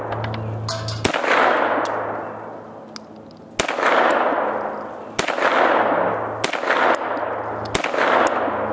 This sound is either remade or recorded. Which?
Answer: recorded